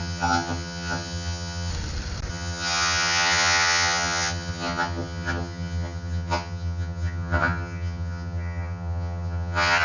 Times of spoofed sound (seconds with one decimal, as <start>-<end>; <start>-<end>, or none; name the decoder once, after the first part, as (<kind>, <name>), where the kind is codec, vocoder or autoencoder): 0.0-1.7 (vocoder, HiFi-GAN); 2.3-9.8